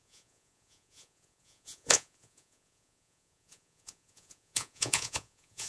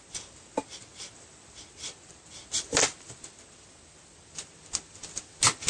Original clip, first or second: second